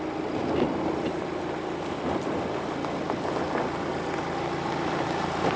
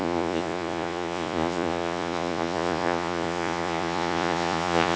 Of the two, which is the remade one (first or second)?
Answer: second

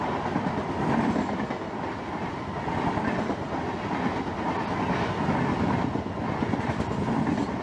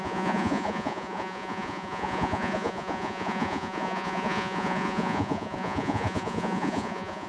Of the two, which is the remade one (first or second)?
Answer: second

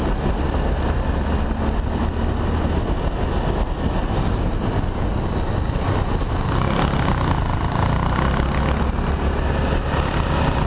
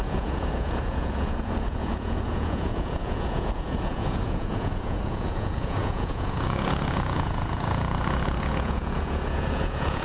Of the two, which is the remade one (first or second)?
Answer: second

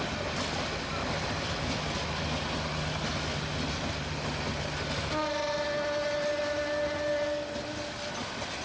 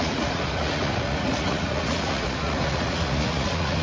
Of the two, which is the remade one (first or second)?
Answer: second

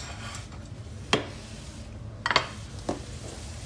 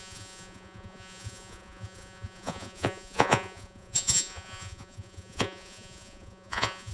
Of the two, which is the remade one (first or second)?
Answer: second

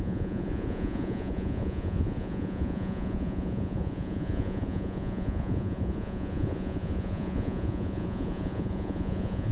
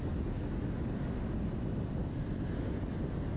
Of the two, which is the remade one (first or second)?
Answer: first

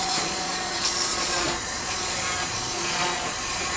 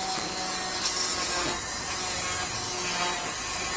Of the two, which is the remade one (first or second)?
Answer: first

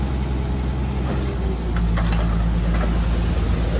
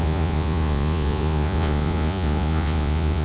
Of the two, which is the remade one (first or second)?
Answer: second